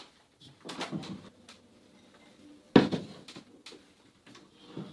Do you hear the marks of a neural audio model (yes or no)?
no